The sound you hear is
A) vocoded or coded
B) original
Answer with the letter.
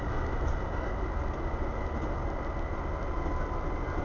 B